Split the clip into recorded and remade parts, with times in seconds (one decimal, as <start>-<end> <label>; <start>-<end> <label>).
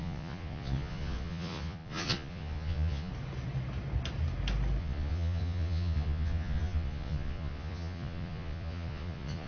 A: 0.0-3.1 remade; 3.1-4.8 recorded; 4.8-9.5 remade